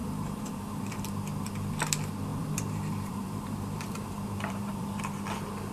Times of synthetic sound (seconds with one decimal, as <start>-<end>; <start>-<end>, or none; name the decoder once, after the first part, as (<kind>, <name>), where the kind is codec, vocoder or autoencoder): 0.0-1.0 (vocoder, BigVGAN v2); 2.3-5.0